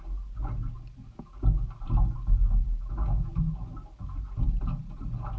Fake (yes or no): no